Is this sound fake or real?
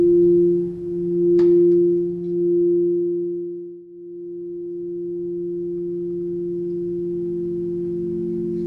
real